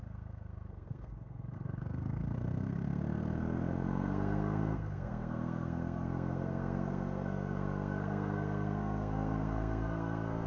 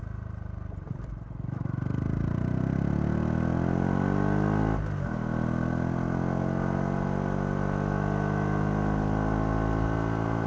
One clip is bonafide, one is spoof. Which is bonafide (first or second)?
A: second